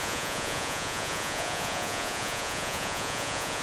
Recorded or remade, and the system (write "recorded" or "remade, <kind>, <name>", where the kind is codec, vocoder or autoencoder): remade, vocoder, Vocos